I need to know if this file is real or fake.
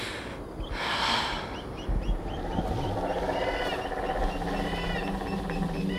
real